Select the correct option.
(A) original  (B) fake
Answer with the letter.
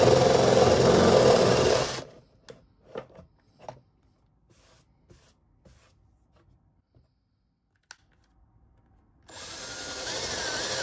A